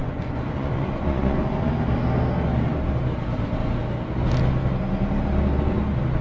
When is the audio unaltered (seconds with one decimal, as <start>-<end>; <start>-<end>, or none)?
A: 1.7-6.2